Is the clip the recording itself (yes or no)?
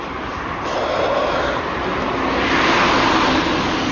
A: yes